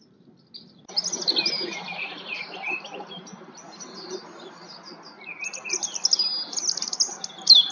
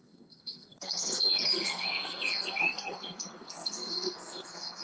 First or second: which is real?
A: first